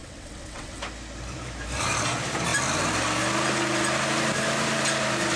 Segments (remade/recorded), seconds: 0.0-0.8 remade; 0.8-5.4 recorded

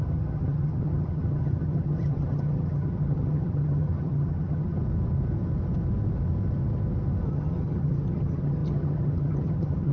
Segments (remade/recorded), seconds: 0.0-4.8 remade; 4.8-7.3 recorded; 7.3-9.9 remade

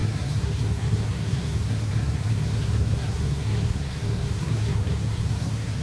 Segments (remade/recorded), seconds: 0.0-5.8 remade